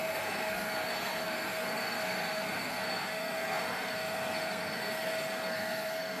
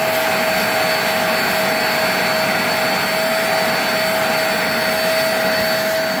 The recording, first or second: second